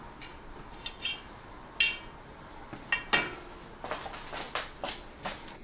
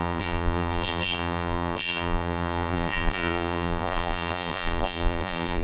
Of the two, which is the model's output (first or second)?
second